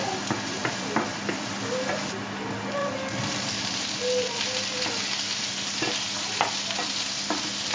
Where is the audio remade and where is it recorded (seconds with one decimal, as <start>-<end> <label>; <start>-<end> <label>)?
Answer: 0.0-0.6 recorded; 0.6-1.5 remade; 1.5-2.8 recorded; 2.8-4.4 remade; 4.4-7.7 recorded